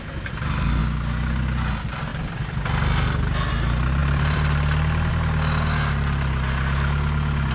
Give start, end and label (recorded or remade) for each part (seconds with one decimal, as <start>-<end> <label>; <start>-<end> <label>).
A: 0.0-4.0 recorded; 4.0-5.1 remade; 5.1-7.5 recorded